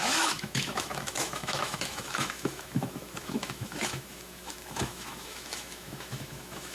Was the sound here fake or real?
fake